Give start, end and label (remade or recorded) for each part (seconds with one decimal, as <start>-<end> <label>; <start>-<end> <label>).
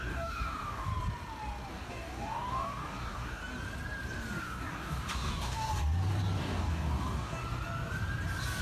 0.0-0.9 remade; 0.9-1.7 recorded; 1.7-3.4 remade; 3.4-4.4 recorded; 4.4-5.7 remade; 5.7-6.4 recorded; 6.4-7.4 remade; 7.4-8.6 recorded